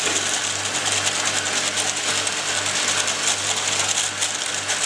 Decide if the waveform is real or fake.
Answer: real